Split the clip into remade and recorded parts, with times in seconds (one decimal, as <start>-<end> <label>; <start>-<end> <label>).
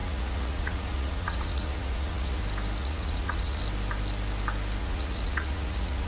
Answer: 0.0-2.4 remade; 2.4-2.8 recorded; 2.8-3.6 remade; 3.6-4.8 recorded; 4.8-6.1 remade